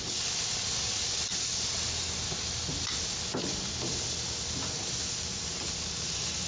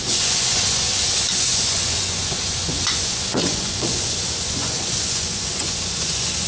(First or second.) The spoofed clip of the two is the second